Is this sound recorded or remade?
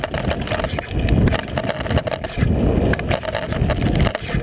recorded